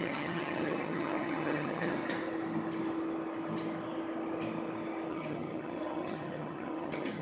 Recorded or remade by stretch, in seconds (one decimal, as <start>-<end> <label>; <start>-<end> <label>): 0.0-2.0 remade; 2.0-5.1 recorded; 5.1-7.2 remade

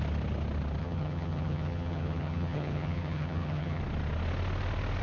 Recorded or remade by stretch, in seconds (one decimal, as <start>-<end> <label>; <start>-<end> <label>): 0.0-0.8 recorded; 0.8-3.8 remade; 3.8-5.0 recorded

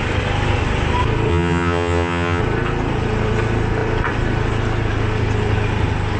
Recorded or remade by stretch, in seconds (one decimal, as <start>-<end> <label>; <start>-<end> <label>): 0.0-1.3 recorded; 1.3-2.4 remade; 2.4-6.2 recorded